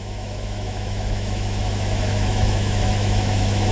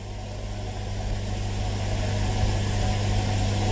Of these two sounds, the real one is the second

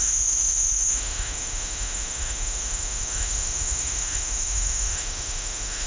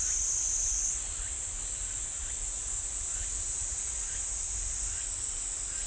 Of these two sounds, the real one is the second